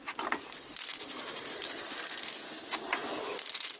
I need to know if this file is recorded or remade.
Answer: recorded